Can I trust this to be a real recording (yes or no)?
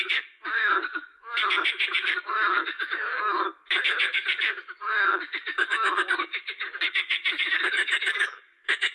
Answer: no